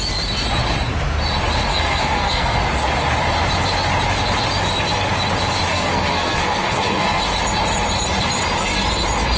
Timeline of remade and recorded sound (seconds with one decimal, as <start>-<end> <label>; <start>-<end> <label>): 0.0-1.7 recorded; 1.7-2.6 remade; 2.6-5.7 recorded; 5.7-7.2 remade; 7.2-9.4 recorded